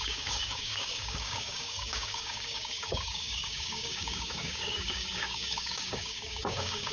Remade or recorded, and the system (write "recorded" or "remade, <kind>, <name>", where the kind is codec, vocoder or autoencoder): remade, codec, DAC